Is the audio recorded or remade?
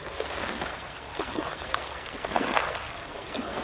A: remade